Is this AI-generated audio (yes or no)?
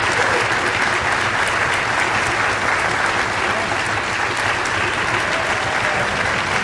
no